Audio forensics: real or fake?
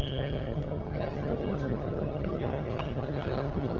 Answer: fake